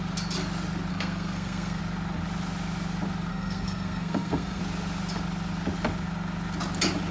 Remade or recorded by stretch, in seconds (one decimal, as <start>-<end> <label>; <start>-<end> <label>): 0.0-0.9 recorded; 0.9-1.8 remade; 1.8-3.3 recorded; 3.3-4.6 remade; 4.6-7.1 recorded